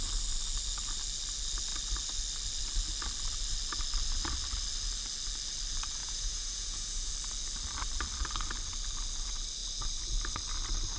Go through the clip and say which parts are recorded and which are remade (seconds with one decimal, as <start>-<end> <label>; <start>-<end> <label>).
0.0-6.0 recorded; 6.0-7.1 remade; 7.1-11.0 recorded

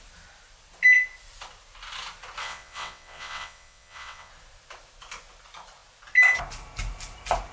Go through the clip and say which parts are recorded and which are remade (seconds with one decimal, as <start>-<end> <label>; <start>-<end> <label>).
0.0-2.4 recorded; 2.4-4.3 remade; 4.3-7.5 recorded

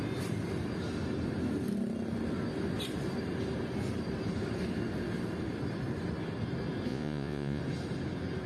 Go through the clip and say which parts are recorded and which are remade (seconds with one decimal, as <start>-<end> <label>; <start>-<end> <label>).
0.0-6.9 recorded; 6.9-7.6 remade; 7.6-8.5 recorded

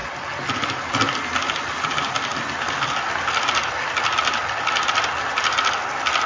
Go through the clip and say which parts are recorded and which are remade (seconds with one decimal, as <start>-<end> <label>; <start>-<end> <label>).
0.0-6.3 recorded